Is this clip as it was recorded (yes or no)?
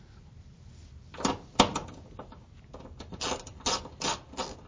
yes